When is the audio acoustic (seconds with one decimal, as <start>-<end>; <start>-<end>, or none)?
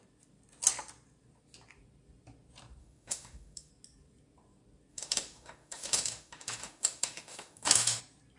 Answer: 0.0-2.8; 3.7-4.9; 8.0-8.4